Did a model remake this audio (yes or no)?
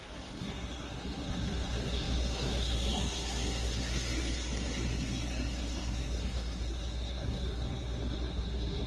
yes